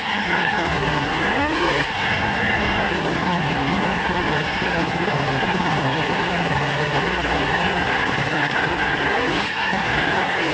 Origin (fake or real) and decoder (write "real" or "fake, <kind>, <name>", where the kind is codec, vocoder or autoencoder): fake, codec, SNAC